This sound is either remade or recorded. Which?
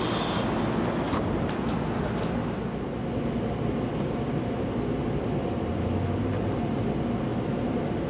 recorded